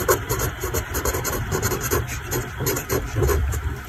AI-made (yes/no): yes